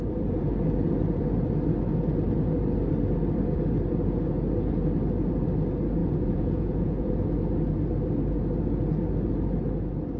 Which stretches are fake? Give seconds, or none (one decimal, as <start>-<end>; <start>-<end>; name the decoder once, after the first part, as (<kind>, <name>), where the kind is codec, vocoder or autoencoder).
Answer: 6.0-7.1 (vocoder, Vocos)